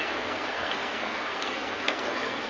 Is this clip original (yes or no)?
no